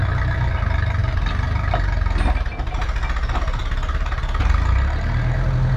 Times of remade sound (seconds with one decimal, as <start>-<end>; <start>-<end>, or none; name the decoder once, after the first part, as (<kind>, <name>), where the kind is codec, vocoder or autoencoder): 3.6-4.2 (vocoder, BigVGAN v2)